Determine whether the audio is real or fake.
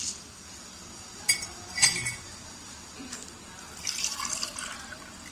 real